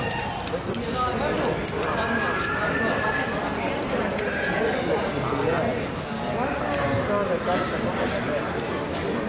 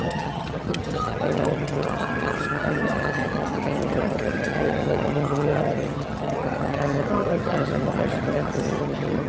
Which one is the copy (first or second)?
second